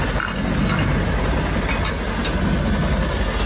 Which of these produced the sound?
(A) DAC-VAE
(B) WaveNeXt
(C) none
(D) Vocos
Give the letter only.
C